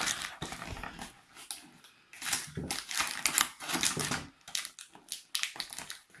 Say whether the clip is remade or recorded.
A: recorded